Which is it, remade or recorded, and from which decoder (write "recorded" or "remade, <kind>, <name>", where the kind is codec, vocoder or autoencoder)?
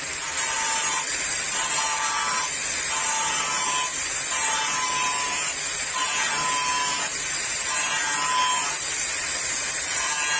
recorded